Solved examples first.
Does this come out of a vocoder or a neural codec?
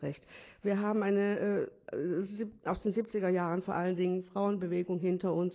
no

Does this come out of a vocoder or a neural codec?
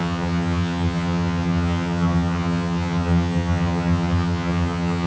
yes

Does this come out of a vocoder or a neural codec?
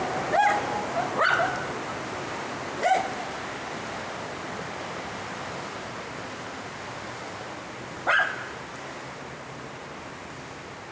no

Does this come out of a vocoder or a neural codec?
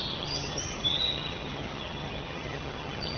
yes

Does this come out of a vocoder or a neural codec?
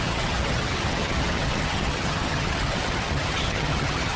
yes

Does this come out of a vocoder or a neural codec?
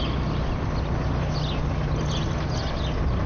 no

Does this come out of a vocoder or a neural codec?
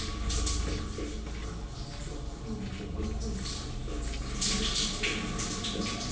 no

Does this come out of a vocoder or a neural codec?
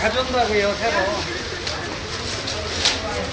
no